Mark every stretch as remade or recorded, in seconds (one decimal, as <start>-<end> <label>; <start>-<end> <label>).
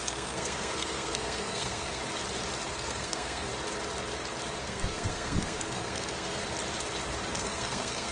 0.0-2.0 remade; 2.0-2.7 recorded; 2.7-3.5 remade; 3.5-4.6 recorded; 4.6-6.4 remade; 6.4-7.3 recorded; 7.3-8.1 remade